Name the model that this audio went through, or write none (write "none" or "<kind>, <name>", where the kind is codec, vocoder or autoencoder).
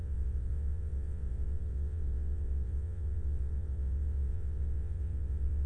vocoder, WaveNeXt